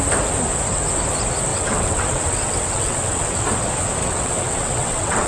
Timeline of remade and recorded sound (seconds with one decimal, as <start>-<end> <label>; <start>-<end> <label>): 0.0-1.5 recorded; 1.5-3.4 remade; 3.4-4.0 recorded; 4.0-5.3 remade